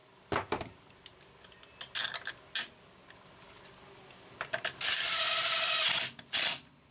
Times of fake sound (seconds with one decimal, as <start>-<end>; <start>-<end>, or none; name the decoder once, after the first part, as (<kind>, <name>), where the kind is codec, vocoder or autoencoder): none